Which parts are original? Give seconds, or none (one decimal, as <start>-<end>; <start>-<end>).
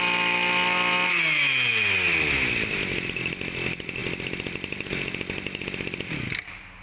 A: 0.0-6.8